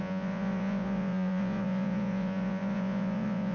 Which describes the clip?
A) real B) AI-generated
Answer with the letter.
B